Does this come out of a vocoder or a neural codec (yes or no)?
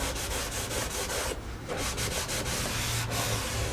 no